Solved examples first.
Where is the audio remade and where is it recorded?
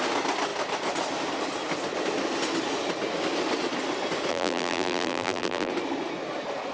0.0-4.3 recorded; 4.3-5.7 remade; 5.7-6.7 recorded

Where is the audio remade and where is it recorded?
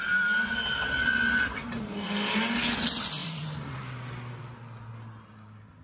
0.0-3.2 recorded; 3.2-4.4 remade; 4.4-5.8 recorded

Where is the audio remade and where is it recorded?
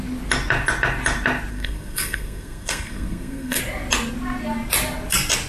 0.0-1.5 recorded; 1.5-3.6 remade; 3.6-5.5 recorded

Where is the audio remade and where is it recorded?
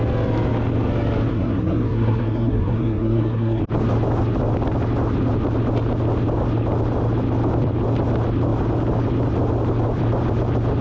0.0-1.3 recorded; 1.3-3.6 remade; 3.6-10.8 recorded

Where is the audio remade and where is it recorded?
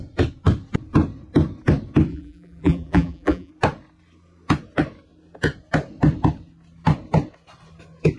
0.0-2.1 recorded; 2.1-3.5 remade; 3.5-8.2 recorded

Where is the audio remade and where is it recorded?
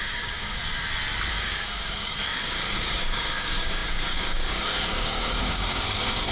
0.0-0.6 remade; 0.6-1.3 recorded; 1.3-6.3 remade